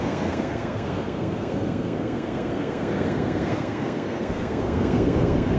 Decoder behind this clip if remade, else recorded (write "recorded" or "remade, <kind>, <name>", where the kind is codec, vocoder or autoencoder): remade, codec, SNAC